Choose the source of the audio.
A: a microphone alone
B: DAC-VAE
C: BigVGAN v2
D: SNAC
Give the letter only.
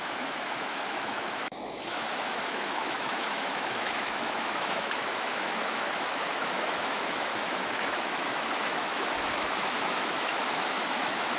B